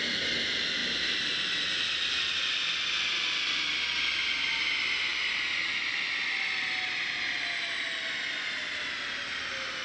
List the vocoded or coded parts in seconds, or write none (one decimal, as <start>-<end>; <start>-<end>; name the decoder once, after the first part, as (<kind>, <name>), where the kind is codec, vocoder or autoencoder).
none